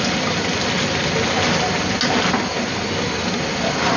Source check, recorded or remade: recorded